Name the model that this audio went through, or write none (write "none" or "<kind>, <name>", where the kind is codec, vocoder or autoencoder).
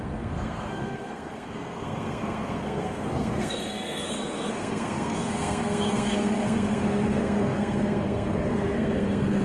codec, SNAC